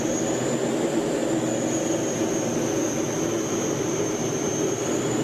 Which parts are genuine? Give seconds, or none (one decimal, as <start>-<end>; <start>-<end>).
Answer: 0.0-5.2

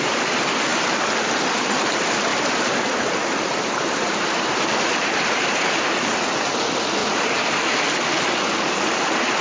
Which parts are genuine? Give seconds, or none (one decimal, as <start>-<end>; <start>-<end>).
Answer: 0.0-2.3; 5.9-7.0; 7.5-9.4

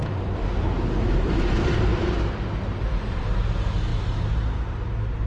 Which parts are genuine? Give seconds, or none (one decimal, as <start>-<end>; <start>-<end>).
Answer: 0.0-5.3

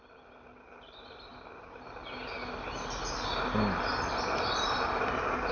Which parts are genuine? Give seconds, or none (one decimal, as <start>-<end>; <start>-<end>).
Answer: 0.0-5.5

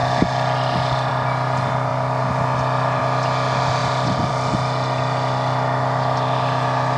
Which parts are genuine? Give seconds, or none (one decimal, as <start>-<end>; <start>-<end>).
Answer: 0.0-7.0

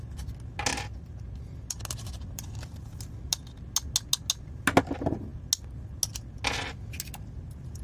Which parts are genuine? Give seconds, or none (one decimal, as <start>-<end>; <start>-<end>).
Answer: 0.0-7.8

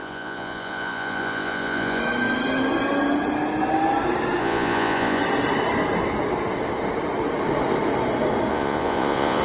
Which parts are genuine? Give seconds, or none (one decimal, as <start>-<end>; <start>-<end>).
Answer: 2.0-4.4; 5.2-8.5